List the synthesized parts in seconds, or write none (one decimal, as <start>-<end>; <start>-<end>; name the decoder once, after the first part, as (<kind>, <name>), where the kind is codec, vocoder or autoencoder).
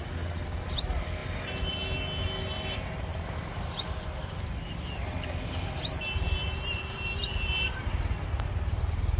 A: none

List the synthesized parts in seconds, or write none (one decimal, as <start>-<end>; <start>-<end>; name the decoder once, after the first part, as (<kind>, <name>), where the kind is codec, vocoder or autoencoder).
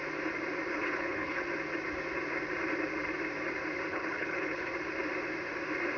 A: 0.7-1.4 (codec, HILCodec); 3.9-4.7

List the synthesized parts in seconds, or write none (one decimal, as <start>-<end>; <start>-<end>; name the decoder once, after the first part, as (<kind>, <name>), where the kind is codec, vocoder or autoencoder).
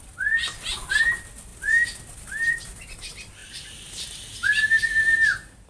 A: none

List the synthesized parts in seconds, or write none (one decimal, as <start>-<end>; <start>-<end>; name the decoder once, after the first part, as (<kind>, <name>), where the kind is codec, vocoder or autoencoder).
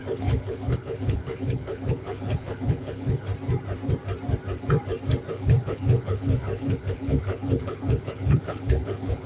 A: 0.0-3.3 (codec, HILCodec); 5.3-9.3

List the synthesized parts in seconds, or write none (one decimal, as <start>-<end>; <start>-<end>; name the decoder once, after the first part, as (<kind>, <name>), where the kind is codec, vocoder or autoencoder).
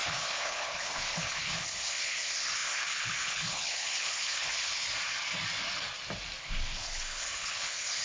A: 0.0-4.8 (codec, HILCodec); 6.4-8.0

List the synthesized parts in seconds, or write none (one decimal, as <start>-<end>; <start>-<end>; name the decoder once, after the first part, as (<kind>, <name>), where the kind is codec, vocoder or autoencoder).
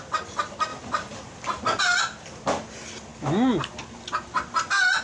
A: none